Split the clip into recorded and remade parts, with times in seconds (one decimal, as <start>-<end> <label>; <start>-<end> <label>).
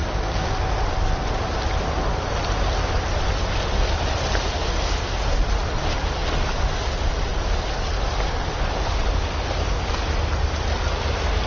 0.0-11.5 recorded